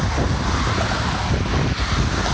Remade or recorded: recorded